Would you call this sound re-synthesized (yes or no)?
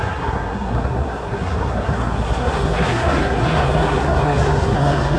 yes